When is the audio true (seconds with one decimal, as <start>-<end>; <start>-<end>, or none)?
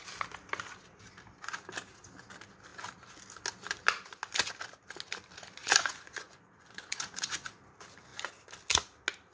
0.0-5.6; 7.6-9.3